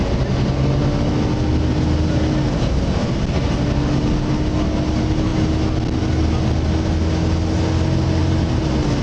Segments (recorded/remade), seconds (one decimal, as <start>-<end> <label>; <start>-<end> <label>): 0.0-9.0 recorded